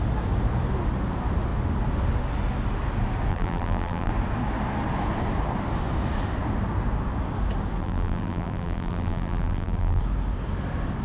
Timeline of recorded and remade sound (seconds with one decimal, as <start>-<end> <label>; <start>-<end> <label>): 0.0-3.3 recorded; 3.3-4.1 remade; 4.1-7.8 recorded; 7.8-10.0 remade; 10.0-11.0 recorded